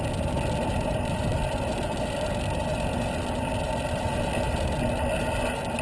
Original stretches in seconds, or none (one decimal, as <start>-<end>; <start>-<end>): 0.0-5.8